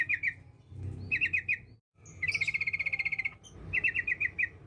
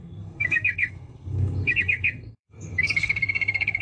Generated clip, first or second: second